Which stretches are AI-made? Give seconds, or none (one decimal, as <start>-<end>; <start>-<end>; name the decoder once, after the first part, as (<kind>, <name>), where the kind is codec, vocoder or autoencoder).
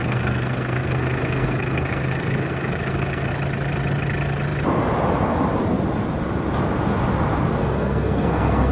0.0-3.3 (codec, SNAC); 7.6-8.7